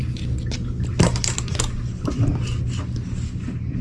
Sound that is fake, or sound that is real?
real